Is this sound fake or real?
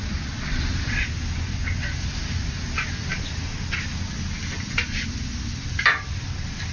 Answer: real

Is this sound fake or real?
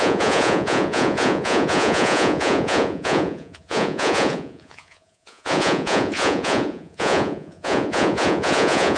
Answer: fake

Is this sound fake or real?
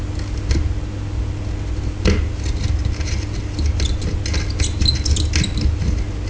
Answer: real